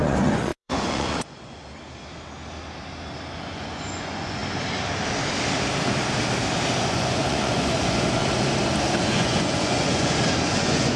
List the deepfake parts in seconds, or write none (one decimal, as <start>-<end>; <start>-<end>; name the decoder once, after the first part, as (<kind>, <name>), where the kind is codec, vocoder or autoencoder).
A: 0.0-1.6 (vocoder, Vocos); 3.4-4.4; 6.8-8.2; 9.0-11.0